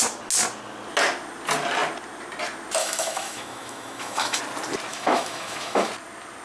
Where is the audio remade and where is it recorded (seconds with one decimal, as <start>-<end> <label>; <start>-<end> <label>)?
0.0-2.8 recorded; 2.8-4.4 remade; 4.4-4.9 recorded; 4.9-5.9 remade; 5.9-6.4 recorded